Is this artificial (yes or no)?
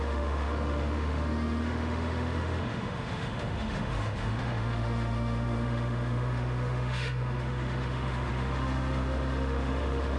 yes